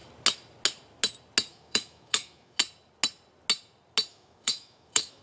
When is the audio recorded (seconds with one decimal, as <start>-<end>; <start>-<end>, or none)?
0.0-1.5; 2.6-4.1